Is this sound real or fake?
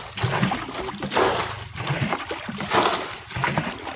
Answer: real